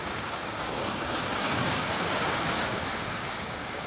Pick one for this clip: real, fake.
fake